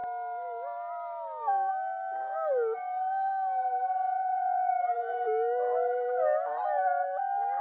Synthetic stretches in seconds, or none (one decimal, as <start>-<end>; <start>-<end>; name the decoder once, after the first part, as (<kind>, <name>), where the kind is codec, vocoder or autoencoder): 4.2-4.7 (vocoder, Vocos)